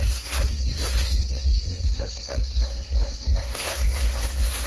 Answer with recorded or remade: remade